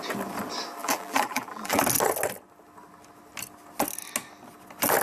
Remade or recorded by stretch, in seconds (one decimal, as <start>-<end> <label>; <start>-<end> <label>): 0.0-0.8 recorded; 0.8-1.8 remade; 1.8-5.0 recorded